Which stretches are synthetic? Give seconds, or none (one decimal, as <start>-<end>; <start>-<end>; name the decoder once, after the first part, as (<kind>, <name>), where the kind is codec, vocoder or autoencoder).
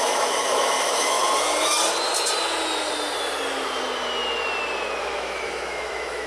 0.0-1.2 (autoencoder, DAC-VAE); 5.0-6.3